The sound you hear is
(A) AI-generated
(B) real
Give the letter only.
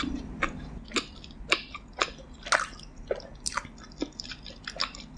B